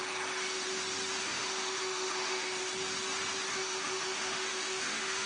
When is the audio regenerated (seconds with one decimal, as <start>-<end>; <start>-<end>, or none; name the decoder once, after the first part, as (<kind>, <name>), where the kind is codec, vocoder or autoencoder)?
1.2-2.6 (autoencoder, DAC-VAE); 3.5-5.3